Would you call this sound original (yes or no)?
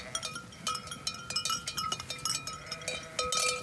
yes